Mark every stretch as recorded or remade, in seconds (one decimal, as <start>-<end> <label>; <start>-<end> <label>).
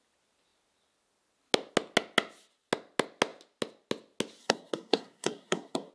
0.0-4.4 recorded; 4.4-5.9 remade